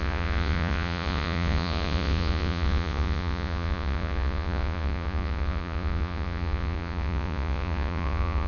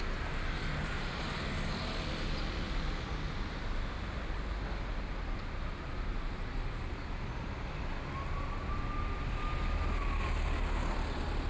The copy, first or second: first